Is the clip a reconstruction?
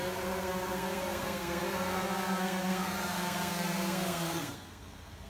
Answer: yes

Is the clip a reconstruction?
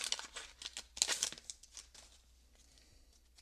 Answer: no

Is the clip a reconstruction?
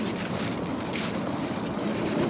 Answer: no